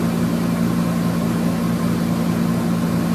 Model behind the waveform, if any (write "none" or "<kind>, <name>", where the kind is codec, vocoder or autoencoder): none